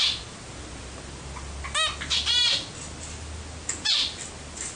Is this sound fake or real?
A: real